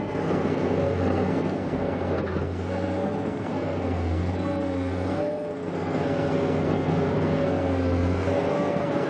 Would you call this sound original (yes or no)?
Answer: no